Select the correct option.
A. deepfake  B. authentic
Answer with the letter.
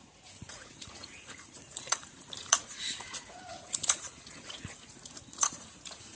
A